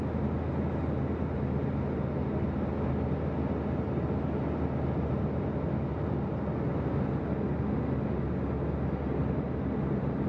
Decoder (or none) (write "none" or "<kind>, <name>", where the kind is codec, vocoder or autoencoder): none